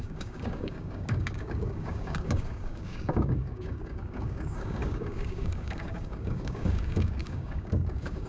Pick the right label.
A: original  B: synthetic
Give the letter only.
B